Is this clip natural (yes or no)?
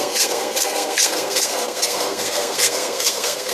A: no